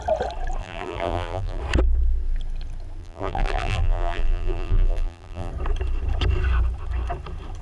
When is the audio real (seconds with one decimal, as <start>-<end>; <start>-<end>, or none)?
0.0-0.6; 1.6-3.0; 5.5-7.6